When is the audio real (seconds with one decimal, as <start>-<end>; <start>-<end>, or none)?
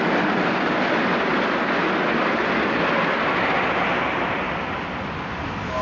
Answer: 0.0-5.8